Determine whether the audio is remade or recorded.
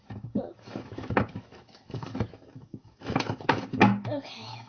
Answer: remade